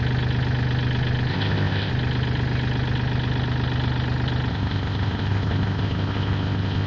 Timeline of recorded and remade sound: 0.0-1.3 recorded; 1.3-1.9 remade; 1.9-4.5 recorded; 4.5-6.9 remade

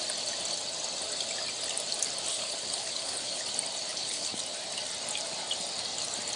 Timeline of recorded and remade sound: 0.0-2.3 recorded; 2.3-3.4 remade; 3.4-3.9 recorded; 3.9-4.4 remade; 4.4-6.4 recorded

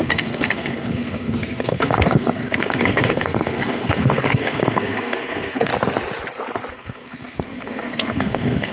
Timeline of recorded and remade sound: 0.0-5.7 remade; 5.7-6.7 recorded; 6.7-8.7 remade